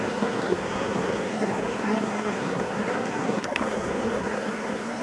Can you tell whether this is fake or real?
fake